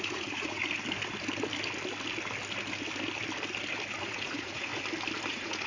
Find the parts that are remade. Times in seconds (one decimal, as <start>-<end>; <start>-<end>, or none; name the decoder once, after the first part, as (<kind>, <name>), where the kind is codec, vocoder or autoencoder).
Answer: 0.0-0.6 (vocoder, Vocos); 4.0-4.7; 5.3-5.7